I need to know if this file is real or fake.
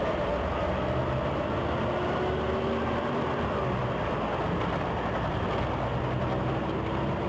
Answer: real